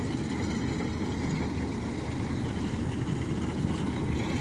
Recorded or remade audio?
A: recorded